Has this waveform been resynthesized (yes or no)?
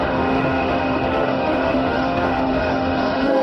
yes